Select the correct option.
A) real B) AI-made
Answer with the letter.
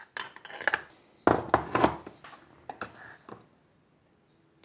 A